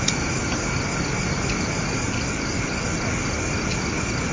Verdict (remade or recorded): recorded